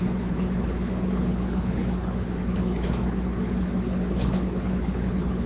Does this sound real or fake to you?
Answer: fake